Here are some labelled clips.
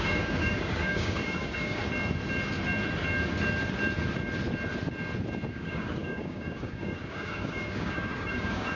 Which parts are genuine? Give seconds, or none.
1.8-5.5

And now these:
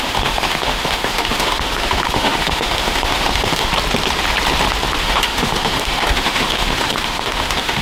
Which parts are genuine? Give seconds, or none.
3.7-5.0

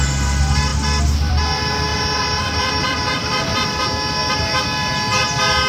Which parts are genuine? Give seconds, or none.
0.0-1.9; 3.8-5.7

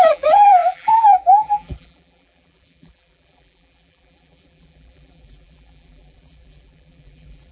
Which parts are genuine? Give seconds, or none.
none

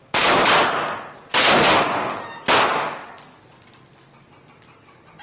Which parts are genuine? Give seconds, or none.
0.0-5.2

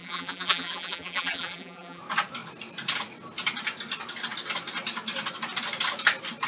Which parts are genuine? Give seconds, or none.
2.0-6.5

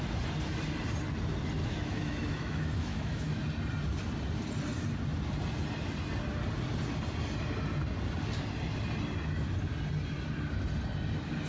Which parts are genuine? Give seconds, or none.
0.0-1.6; 3.4-11.5